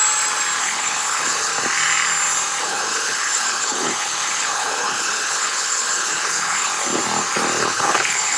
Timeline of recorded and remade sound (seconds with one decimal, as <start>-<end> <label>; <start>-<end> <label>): 0.0-0.6 recorded; 0.6-1.5 remade; 1.5-2.6 recorded; 2.6-6.7 remade; 6.7-7.6 recorded; 7.6-8.4 remade